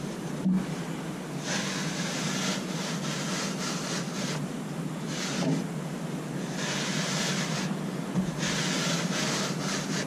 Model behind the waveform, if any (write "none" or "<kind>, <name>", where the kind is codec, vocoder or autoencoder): none